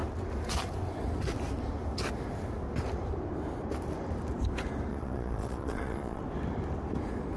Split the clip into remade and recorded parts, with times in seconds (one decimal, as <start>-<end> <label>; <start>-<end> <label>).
0.0-4.9 recorded; 4.9-6.2 remade; 6.2-7.4 recorded